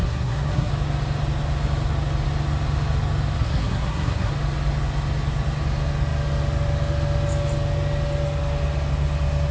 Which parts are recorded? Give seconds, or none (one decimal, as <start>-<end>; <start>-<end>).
0.7-3.4; 4.3-9.5